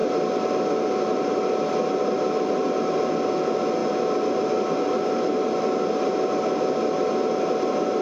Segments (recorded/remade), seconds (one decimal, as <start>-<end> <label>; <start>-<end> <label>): 0.0-8.0 recorded